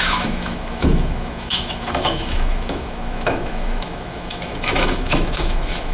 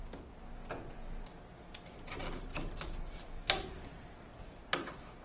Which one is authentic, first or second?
second